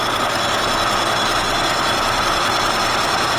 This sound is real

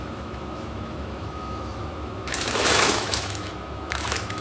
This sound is fake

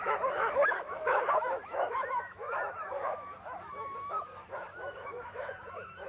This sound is fake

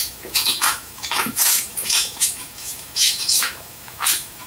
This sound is fake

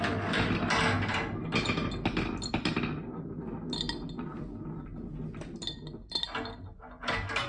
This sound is real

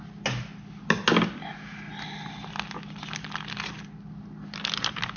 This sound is real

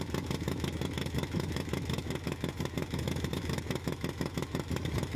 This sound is fake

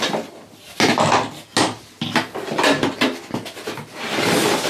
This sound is real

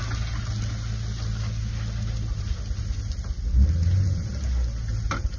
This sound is real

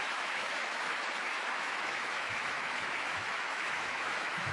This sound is fake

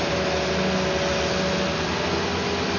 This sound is real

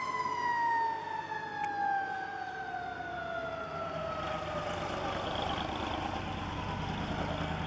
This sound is real